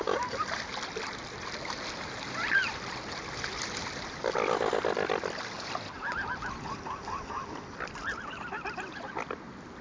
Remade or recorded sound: remade